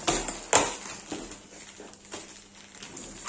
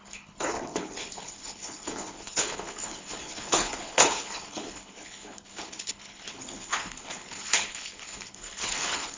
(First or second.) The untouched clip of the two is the first